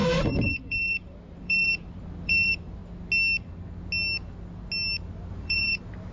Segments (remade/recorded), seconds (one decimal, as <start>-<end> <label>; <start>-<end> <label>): 0.0-2.8 remade; 2.8-5.3 recorded; 5.3-6.1 remade